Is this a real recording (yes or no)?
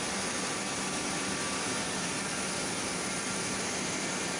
yes